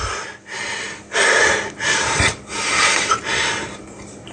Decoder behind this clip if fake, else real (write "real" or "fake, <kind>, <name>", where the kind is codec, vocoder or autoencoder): real